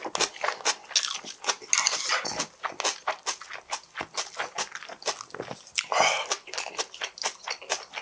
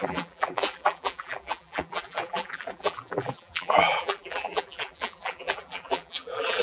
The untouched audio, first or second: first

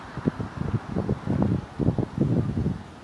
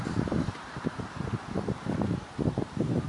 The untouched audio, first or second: first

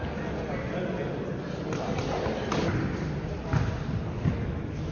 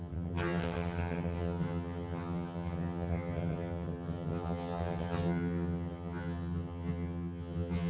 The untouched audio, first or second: first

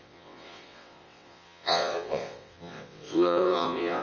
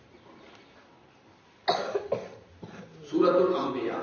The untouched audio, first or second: second